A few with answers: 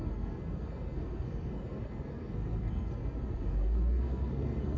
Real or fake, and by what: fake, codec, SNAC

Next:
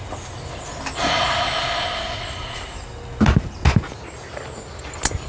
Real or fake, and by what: real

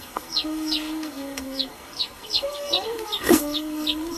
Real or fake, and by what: fake, codec, SNAC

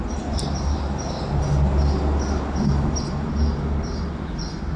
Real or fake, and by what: real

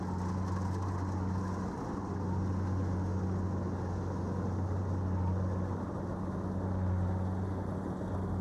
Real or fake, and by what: real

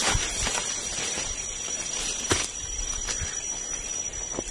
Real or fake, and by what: real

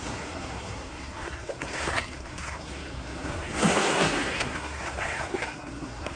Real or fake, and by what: fake, codec, SNAC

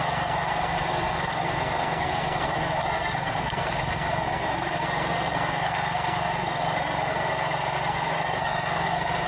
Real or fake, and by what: fake, codec, SNAC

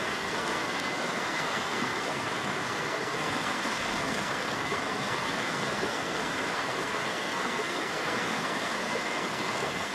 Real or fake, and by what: fake, codec, SNAC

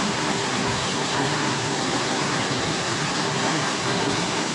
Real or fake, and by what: fake, codec, SNAC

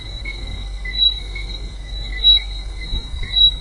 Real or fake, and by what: fake, codec, SNAC